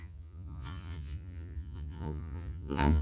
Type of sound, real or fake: fake